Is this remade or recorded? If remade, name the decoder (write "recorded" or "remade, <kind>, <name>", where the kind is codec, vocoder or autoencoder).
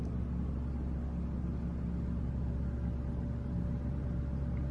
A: recorded